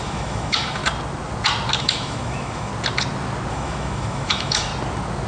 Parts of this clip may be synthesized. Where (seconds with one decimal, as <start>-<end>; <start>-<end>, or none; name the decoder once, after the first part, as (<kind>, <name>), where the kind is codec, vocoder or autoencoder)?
0.0-0.8 (autoencoder, DAC-VAE); 1.8-2.7; 3.5-4.7

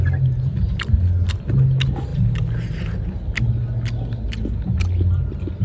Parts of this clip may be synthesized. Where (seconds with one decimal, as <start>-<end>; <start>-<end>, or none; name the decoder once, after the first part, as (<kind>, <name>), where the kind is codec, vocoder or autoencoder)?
none

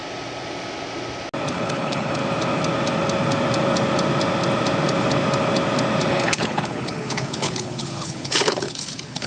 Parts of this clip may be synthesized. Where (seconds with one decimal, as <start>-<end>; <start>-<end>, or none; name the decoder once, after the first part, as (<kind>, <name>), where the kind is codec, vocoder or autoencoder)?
1.5-2.2 (codec, HILCodec); 6.1-9.3